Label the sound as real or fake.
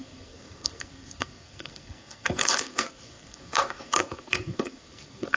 fake